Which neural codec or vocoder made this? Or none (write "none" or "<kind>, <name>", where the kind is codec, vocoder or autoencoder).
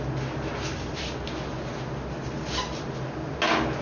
none